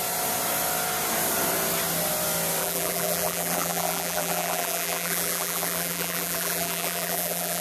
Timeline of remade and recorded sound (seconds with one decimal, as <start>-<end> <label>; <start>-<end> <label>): 0.0-2.6 recorded; 2.6-7.6 remade